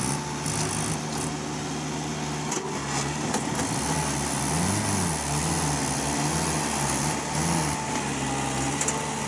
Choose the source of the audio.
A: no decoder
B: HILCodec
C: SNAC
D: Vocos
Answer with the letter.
A